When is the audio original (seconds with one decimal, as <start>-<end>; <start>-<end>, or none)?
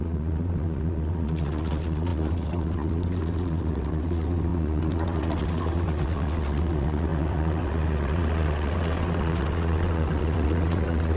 none